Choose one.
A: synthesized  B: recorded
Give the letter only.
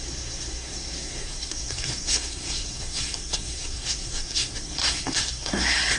A